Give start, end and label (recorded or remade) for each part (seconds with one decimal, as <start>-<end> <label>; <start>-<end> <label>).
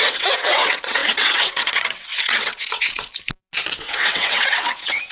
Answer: 0.0-3.1 remade; 3.1-3.8 recorded; 3.8-5.1 remade